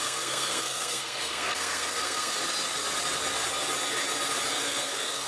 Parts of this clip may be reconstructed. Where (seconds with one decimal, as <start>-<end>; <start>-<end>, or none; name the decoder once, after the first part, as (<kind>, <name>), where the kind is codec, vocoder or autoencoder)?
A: 0.0-2.4 (codec, SNAC); 4.5-5.3